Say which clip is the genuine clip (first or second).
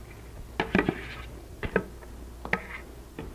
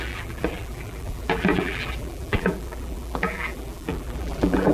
first